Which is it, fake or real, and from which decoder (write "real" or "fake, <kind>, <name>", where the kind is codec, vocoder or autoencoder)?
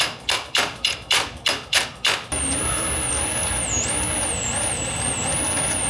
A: real